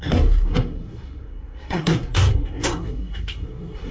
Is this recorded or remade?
remade